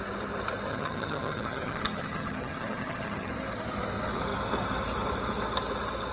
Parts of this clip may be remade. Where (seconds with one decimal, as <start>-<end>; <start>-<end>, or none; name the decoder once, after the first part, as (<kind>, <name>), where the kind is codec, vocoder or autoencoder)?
0.7-3.3 (vocoder, HiFi-GAN)